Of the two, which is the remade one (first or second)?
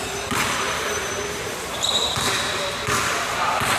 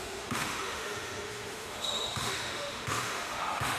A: second